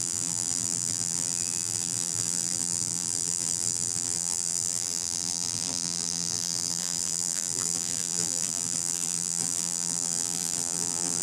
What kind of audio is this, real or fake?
fake